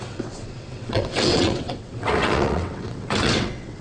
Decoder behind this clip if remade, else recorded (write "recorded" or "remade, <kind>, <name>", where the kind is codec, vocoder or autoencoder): remade, vocoder, WaveNeXt